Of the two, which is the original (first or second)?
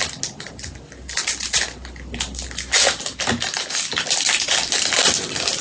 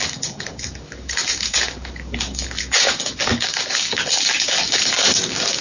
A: first